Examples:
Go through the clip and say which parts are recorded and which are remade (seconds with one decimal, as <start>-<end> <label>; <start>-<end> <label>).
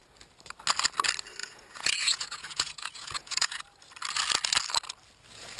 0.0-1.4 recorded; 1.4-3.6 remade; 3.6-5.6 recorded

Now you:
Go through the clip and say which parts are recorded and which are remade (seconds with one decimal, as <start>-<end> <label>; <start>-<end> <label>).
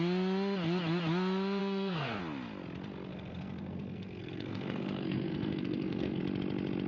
0.0-1.6 recorded; 1.6-2.2 remade; 2.2-3.1 recorded; 3.1-6.2 remade; 6.2-6.9 recorded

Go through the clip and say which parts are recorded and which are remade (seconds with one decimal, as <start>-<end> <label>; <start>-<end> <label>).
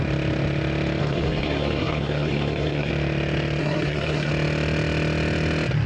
0.0-1.0 recorded; 1.0-2.9 remade; 2.9-3.6 recorded; 3.6-4.3 remade; 4.3-5.9 recorded